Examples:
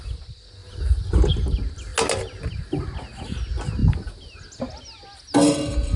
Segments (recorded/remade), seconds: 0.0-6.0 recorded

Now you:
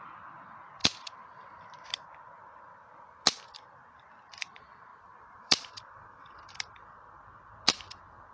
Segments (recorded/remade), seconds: 0.0-0.8 recorded; 0.8-1.6 remade; 1.6-4.9 recorded; 4.9-6.3 remade; 6.3-8.3 recorded